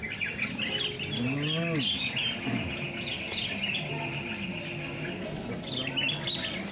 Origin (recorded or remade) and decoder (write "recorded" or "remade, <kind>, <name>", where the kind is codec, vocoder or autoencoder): recorded